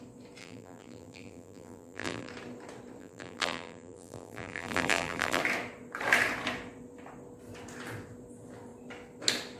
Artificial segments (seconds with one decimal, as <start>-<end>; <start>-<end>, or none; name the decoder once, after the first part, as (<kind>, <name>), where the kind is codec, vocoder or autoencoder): 0.4-2.3 (vocoder, BigVGAN v2); 3.0-5.4